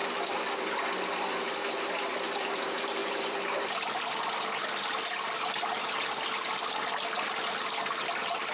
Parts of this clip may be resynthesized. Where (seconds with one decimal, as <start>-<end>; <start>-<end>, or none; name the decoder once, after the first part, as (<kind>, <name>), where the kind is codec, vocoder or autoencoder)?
3.0-4.0 (vocoder, BigVGAN v2)